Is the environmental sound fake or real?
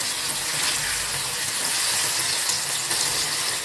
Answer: real